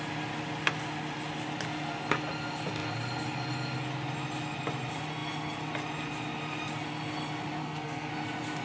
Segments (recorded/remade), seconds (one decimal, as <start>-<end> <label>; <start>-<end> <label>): 0.0-7.6 recorded; 7.6-8.1 remade; 8.1-8.6 recorded